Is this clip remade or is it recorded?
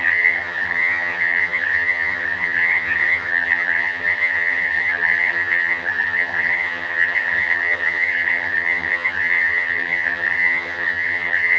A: remade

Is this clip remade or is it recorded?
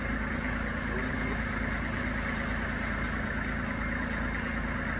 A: recorded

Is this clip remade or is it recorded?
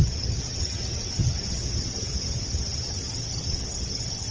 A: remade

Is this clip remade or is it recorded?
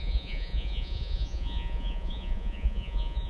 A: remade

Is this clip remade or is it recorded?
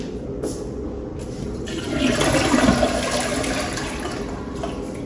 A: recorded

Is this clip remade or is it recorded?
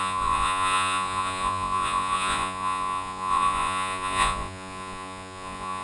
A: remade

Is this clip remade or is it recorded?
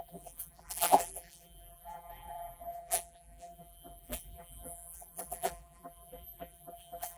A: remade